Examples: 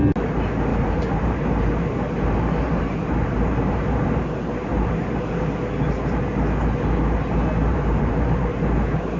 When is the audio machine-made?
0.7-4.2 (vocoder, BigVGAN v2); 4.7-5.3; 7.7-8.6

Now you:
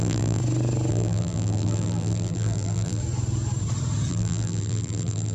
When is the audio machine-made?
0.0-0.4 (vocoder, BigVGAN v2); 0.9-3.0; 4.1-5.3

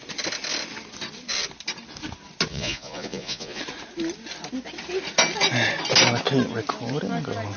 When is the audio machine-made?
2.5-3.6 (vocoder, Vocos)